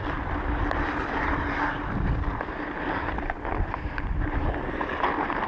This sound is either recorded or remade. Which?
recorded